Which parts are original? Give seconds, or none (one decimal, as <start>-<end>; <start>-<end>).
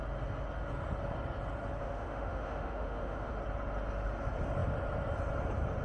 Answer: 0.0-1.8; 3.3-5.8